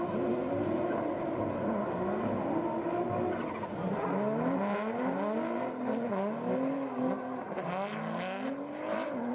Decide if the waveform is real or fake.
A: real